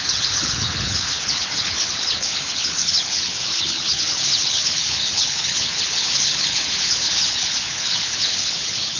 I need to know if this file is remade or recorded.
remade